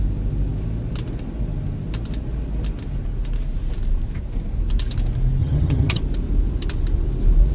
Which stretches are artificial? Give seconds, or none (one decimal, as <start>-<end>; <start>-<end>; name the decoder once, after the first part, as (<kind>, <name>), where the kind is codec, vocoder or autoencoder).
5.4-6.0 (vocoder, HiFi-GAN)